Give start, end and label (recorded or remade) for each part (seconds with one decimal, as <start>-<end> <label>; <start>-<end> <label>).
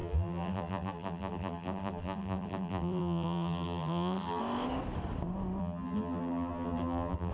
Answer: 0.0-4.4 remade; 4.4-5.6 recorded; 5.6-7.3 remade